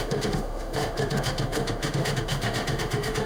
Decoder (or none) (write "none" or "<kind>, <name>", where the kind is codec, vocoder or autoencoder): autoencoder, DAC-VAE